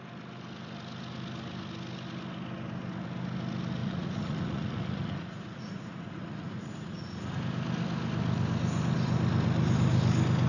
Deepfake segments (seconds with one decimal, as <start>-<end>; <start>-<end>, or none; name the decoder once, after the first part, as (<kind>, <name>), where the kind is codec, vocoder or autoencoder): 3.8-7.4 (vocoder, Vocos)